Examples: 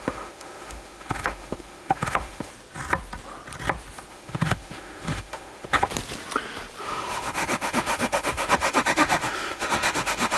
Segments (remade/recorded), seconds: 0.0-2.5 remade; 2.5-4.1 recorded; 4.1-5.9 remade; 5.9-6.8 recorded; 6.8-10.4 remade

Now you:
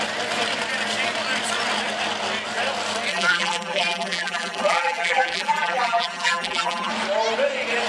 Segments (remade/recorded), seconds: 0.0-3.1 recorded; 3.1-6.9 remade; 6.9-7.9 recorded

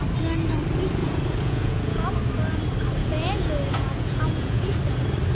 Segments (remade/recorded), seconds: 0.0-1.0 recorded; 1.0-2.1 remade; 2.1-3.0 recorded; 3.0-4.8 remade; 4.8-5.3 recorded